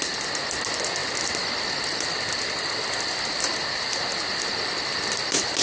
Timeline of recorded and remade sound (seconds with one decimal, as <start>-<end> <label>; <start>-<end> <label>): 0.0-5.6 recorded